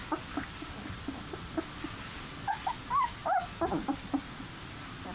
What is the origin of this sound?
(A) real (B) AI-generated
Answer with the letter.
A